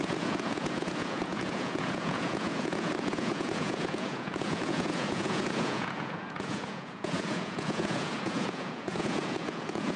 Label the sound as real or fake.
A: fake